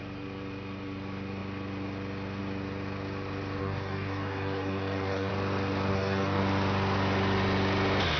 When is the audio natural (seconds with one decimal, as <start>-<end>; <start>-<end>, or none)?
0.0-3.6; 5.3-5.9; 6.4-8.2